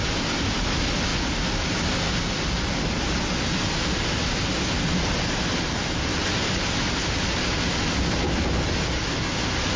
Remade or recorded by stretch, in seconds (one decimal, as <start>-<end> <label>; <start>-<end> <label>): 0.0-9.8 recorded